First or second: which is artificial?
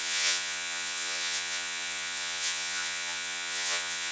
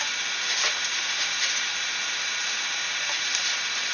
first